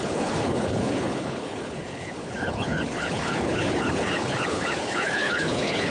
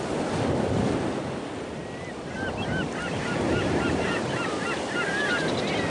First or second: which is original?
second